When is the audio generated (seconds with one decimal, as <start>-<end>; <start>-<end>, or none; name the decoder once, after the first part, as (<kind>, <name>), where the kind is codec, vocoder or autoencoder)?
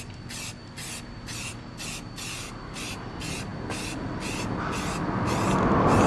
none